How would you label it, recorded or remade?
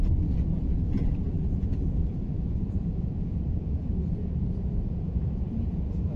remade